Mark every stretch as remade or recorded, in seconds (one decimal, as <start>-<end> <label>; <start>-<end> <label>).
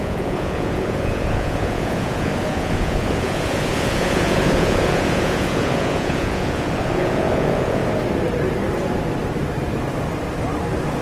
0.0-7.8 remade; 7.8-11.0 recorded